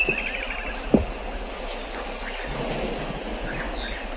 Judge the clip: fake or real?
real